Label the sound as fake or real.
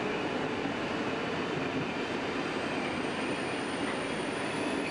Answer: real